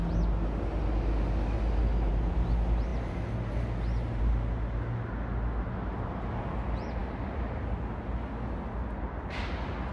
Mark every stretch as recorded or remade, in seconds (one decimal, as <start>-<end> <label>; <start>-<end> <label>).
0.0-9.9 recorded